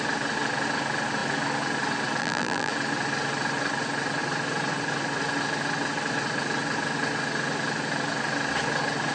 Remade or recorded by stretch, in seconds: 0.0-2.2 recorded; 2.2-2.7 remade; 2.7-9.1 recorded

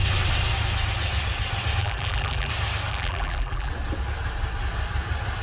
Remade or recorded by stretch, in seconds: 0.0-1.8 recorded; 1.8-2.5 remade; 2.5-2.9 recorded; 2.9-3.7 remade; 3.7-5.4 recorded